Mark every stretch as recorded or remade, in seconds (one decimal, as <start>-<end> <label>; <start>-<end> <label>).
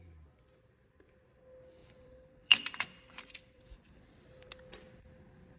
0.0-1.8 recorded; 1.8-4.5 remade; 4.5-5.6 recorded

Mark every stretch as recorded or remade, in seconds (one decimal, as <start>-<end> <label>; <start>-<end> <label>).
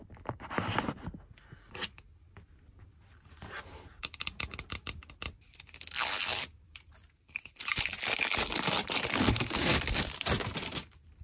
0.0-11.2 recorded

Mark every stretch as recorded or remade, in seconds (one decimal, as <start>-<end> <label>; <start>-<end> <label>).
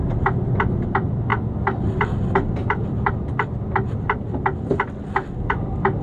0.0-2.6 recorded; 2.6-3.1 remade; 3.1-6.0 recorded